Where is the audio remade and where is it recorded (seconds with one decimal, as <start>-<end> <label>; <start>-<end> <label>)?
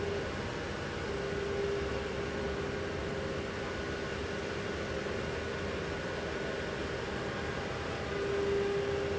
0.0-1.9 recorded; 1.9-3.0 remade; 3.0-9.2 recorded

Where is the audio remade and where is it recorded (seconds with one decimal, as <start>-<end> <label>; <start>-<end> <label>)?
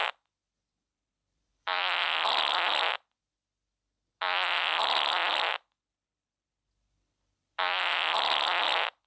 0.0-0.9 recorded; 0.9-2.3 remade; 2.3-5.2 recorded; 5.2-7.8 remade; 7.8-9.1 recorded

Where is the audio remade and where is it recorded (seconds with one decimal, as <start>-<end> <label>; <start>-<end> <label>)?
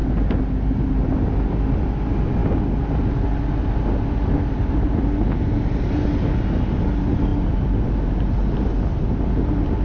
0.0-9.8 recorded